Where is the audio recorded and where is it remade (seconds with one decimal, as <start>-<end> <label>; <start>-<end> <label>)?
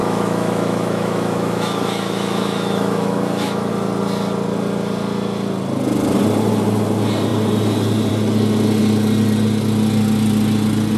0.0-3.7 remade; 3.7-11.0 recorded